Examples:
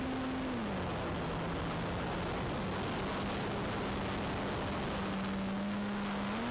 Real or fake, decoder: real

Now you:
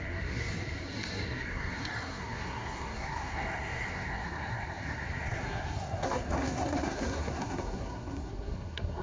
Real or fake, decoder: fake, codec, SNAC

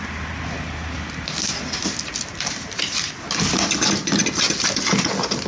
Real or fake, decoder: real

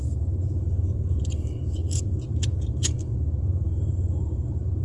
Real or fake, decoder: fake, vocoder, BigVGAN v2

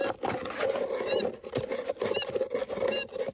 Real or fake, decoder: real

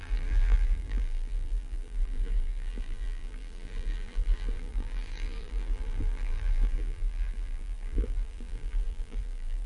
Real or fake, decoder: fake, vocoder, BigVGAN v2